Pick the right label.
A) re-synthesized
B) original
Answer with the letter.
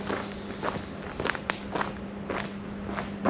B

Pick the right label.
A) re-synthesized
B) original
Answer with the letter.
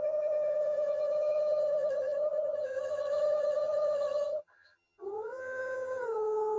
A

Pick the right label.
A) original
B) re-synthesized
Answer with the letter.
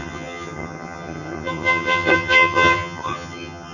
B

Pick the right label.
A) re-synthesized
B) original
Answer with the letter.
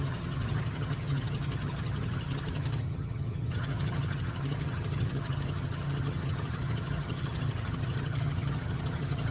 A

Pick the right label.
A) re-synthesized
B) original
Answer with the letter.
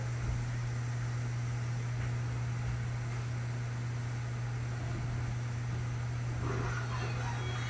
B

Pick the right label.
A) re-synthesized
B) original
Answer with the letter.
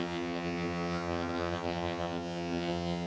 A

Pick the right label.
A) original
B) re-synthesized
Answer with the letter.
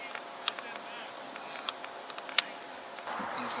A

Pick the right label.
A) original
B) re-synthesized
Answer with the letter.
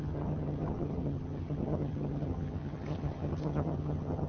B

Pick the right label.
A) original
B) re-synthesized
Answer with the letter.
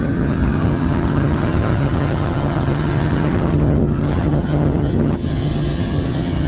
B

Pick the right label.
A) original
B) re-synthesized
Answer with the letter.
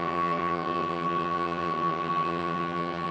B